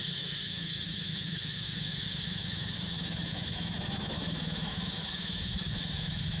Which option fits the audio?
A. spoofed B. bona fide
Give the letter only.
A